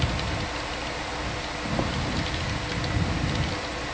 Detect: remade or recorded recorded